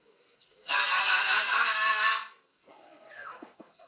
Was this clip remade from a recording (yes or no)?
yes